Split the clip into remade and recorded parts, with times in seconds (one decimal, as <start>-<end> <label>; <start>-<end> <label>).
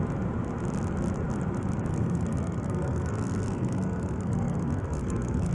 0.0-1.9 recorded; 1.9-5.5 remade